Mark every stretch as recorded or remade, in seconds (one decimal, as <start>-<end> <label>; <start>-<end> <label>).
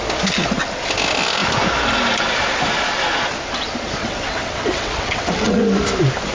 0.0-4.0 recorded; 4.0-5.6 remade; 5.6-6.3 recorded